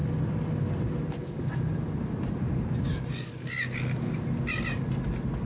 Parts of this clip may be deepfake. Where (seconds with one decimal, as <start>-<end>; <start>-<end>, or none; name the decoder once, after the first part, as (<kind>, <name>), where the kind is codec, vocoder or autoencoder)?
none